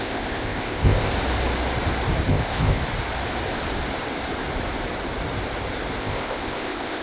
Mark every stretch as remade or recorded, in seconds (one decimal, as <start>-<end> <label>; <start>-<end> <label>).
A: 0.0-1.1 remade; 1.1-2.3 recorded; 2.3-2.8 remade; 2.8-6.0 recorded; 6.0-7.0 remade